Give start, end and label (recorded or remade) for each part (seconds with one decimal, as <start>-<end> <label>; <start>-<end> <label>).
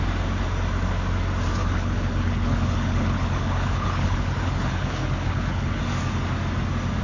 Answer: 0.0-1.6 recorded; 1.6-5.8 remade; 5.8-7.0 recorded